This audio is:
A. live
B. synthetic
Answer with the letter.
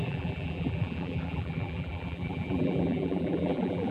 B